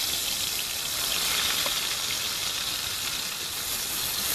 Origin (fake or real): real